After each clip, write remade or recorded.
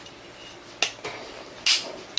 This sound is recorded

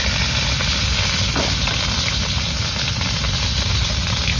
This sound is recorded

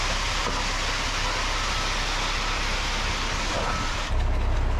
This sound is recorded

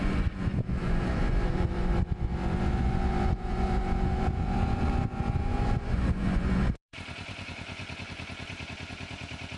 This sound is remade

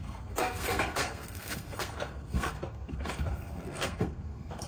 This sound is remade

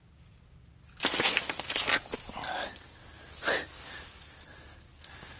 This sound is recorded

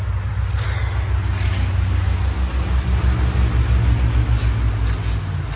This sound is recorded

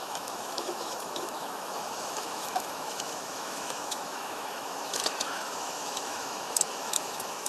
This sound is remade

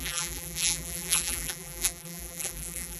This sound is remade